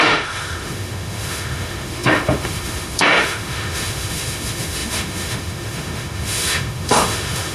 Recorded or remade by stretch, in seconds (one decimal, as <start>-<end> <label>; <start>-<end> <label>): 0.0-7.5 remade